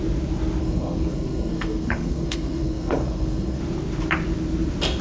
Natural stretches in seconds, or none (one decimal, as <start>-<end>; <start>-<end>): 0.0-0.6; 3.6-5.0